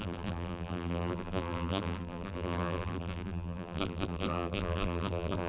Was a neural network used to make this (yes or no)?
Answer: yes